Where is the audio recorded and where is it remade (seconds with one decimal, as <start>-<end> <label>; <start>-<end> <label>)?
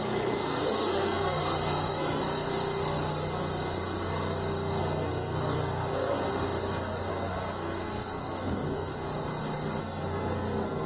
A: 0.0-2.2 remade; 2.2-4.8 recorded; 4.8-6.3 remade; 6.3-7.1 recorded; 7.1-8.9 remade; 8.9-9.8 recorded; 9.8-10.9 remade